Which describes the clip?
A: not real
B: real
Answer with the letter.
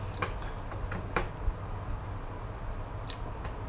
B